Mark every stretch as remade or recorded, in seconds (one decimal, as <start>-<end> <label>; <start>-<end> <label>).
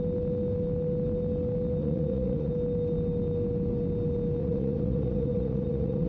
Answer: 0.0-1.8 recorded; 1.8-2.5 remade; 2.5-4.4 recorded; 4.4-6.1 remade